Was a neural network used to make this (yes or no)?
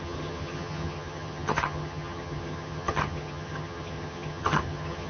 yes